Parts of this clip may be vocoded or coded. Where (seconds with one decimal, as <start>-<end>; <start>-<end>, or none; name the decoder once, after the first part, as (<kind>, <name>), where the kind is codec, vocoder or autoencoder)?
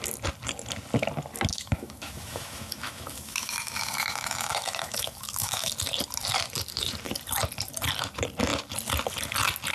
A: 1.5-5.7 (autoencoder, DAC-VAE)